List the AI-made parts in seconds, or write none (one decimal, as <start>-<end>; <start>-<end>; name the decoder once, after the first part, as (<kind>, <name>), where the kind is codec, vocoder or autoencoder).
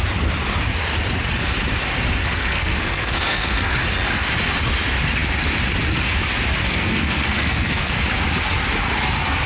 2.2-3.7 (codec, SNAC); 6.6-7.9